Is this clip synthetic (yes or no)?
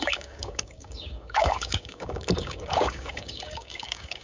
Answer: yes